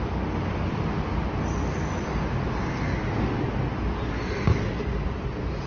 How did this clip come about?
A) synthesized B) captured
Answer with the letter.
B